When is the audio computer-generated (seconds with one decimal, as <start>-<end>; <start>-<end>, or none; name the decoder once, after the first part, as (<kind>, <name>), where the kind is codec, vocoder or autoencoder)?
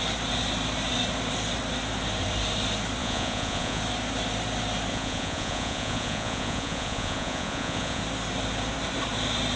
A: 3.0-3.8 (vocoder, Vocos); 4.9-8.0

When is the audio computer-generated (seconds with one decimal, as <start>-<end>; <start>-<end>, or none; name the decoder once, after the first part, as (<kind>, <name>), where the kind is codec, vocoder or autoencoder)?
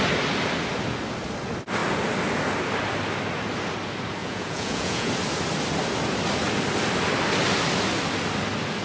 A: 4.2-5.1 (vocoder, Vocos)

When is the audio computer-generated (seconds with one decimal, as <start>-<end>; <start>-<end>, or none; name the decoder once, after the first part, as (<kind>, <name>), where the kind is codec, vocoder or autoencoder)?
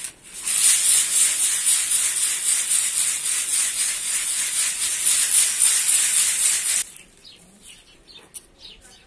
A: 1.0-2.0 (vocoder, Vocos); 3.5-4.8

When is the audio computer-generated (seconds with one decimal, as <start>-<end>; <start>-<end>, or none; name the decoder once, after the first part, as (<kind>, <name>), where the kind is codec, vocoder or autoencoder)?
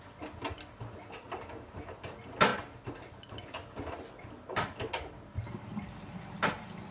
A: none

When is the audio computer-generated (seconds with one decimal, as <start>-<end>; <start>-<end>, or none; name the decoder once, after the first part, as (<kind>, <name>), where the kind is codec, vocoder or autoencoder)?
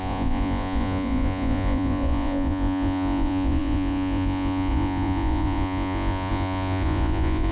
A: 0.0-7.5 (vocoder, Vocos)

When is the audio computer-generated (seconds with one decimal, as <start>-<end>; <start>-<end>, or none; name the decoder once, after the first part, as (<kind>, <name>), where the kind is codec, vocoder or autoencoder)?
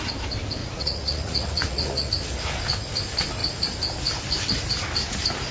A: 0.6-2.1 (vocoder, Vocos)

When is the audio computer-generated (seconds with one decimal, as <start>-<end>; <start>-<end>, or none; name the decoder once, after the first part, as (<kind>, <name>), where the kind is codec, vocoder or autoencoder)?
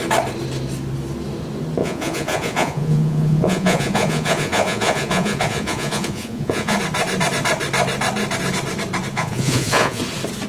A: 1.8-6.8 (vocoder, Vocos); 9.1-10.0